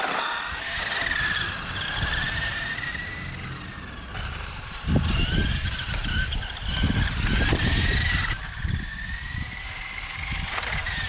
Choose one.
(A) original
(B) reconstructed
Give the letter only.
A